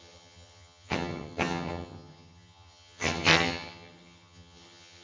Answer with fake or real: fake